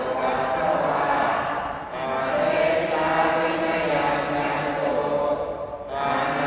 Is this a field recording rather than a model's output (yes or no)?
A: yes